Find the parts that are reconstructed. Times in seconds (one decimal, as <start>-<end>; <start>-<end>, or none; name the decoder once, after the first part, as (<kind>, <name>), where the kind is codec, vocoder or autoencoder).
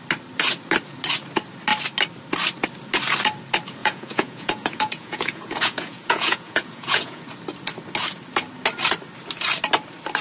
3.8-7.2 (vocoder, Vocos)